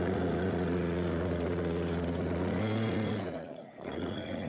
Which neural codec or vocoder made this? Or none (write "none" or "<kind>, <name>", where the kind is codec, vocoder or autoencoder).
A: vocoder, Vocos